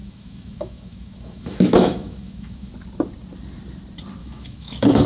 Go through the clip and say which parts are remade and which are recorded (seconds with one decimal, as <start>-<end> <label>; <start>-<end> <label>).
0.0-2.7 remade; 2.7-4.2 recorded; 4.2-5.1 remade